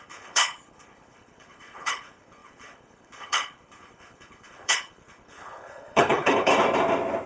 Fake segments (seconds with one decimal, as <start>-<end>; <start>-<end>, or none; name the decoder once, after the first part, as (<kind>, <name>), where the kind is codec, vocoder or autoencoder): 0.0-6.5 (codec, HILCodec)